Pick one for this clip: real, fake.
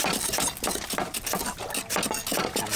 real